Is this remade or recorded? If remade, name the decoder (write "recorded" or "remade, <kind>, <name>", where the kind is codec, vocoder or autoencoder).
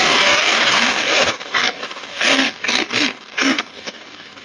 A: remade, codec, DAC